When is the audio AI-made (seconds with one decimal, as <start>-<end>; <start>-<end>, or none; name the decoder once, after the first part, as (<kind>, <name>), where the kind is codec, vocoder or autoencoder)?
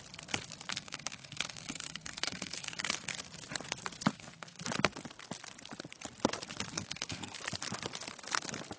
0.7-2.8 (codec, SNAC); 4.1-4.6; 6.7-7.4